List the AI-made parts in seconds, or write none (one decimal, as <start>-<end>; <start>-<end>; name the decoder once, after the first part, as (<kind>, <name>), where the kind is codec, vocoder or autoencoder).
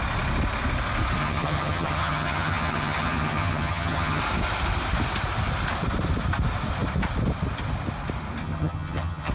1.2-4.2 (vocoder, HiFi-GAN); 8.4-9.3